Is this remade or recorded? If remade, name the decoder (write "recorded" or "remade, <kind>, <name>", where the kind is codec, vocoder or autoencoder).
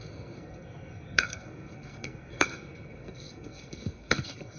remade, codec, SNAC